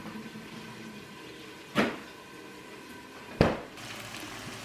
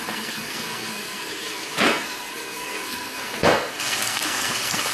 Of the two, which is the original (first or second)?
first